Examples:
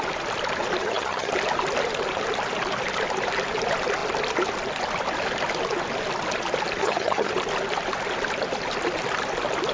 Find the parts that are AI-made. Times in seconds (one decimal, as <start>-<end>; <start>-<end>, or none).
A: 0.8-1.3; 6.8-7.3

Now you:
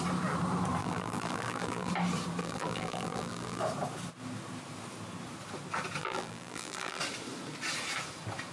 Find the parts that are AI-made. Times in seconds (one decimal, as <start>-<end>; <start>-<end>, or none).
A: 0.8-1.9; 2.4-3.6; 6.0-7.0

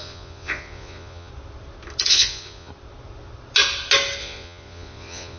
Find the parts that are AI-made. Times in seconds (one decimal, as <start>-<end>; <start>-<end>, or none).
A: 0.0-1.3; 2.1-2.7; 4.2-5.4